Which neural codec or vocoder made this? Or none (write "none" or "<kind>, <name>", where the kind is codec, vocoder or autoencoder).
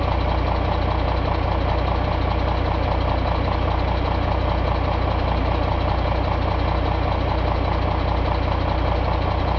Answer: none